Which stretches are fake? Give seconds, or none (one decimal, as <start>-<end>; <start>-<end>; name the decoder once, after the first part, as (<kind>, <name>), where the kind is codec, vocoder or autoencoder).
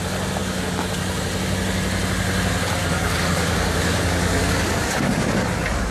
0.4-0.9 (codec, DAC); 2.8-5.9